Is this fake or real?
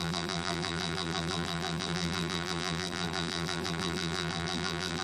fake